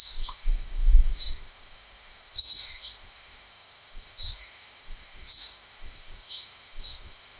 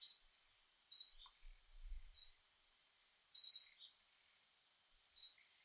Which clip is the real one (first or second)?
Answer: second